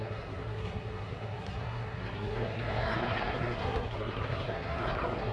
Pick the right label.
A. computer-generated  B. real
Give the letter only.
A